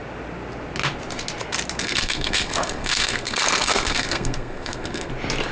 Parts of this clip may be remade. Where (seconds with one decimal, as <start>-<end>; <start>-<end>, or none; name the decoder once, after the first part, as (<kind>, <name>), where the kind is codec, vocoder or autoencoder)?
1.8-5.1 (codec, SNAC)